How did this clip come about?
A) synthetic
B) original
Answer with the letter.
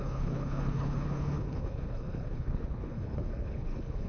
A